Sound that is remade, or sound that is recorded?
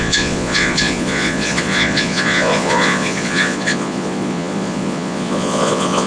remade